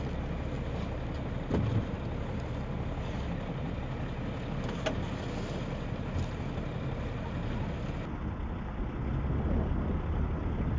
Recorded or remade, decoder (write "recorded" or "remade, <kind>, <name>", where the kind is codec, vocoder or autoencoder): recorded